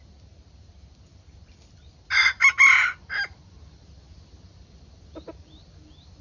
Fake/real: real